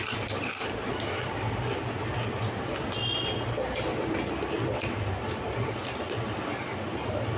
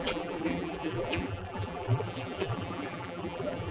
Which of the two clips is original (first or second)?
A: first